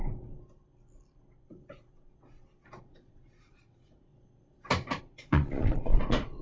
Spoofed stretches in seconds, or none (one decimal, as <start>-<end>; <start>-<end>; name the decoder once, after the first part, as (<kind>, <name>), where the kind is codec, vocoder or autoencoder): 2.8-4.1 (vocoder, Vocos); 5.0-6.4